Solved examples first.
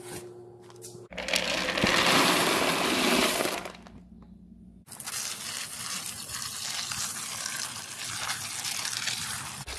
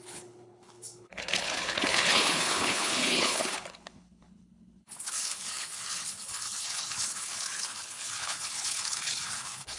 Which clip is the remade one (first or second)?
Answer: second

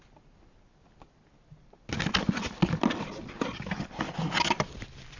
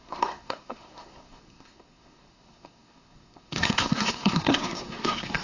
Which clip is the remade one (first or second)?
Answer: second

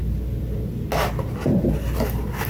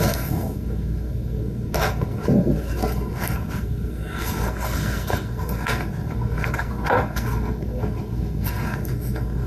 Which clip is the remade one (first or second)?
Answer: second